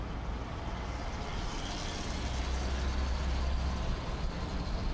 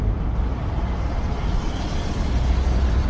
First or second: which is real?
first